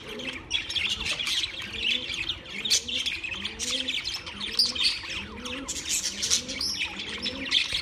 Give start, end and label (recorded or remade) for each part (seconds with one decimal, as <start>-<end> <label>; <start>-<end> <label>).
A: 0.0-7.8 recorded

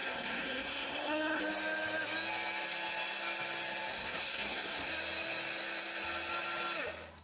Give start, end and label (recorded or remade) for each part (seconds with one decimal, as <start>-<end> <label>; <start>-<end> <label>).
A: 0.0-1.4 remade; 1.4-3.9 recorded; 3.9-4.9 remade; 4.9-7.2 recorded

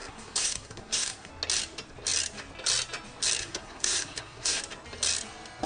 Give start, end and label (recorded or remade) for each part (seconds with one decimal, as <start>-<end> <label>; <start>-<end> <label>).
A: 0.0-1.3 remade; 1.3-3.4 recorded; 3.4-4.6 remade; 4.6-5.7 recorded

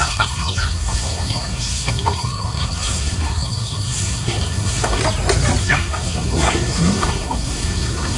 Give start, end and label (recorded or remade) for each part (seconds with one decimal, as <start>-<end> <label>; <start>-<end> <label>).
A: 0.0-5.0 remade; 5.0-5.6 recorded; 5.6-8.2 remade

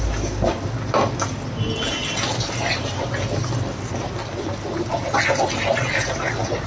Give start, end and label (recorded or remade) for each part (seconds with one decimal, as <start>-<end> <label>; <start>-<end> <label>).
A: 0.0-6.7 recorded

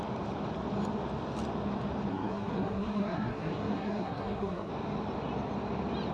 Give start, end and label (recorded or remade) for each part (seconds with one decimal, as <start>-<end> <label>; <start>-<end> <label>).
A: 0.0-2.1 recorded; 2.1-4.7 remade; 4.7-6.1 recorded

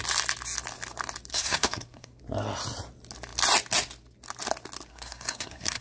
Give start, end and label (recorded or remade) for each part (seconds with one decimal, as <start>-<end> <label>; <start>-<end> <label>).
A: 0.0-1.3 recorded; 1.3-2.2 remade; 2.2-4.9 recorded; 4.9-5.8 remade